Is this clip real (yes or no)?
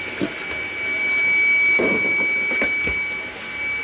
yes